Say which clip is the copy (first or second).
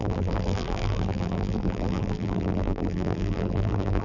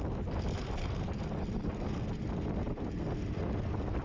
first